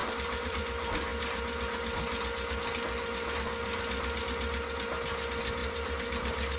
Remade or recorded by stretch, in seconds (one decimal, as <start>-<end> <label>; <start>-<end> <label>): 0.0-0.6 remade; 0.6-5.6 recorded; 5.6-6.6 remade